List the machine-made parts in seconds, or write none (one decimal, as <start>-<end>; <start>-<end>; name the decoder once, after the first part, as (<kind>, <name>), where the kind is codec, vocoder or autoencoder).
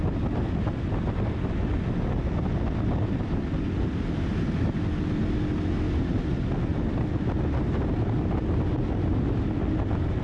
none